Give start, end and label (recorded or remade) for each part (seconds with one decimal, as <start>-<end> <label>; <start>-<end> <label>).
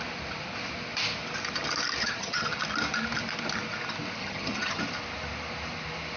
0.0-2.0 recorded; 2.0-2.6 remade; 2.6-4.2 recorded; 4.2-4.8 remade; 4.8-6.2 recorded